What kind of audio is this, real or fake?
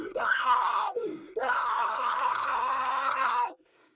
fake